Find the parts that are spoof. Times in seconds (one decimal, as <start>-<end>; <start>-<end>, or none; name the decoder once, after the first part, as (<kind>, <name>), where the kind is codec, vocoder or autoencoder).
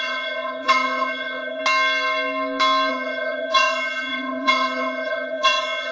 0.0-1.6 (vocoder, HiFi-GAN); 2.9-5.9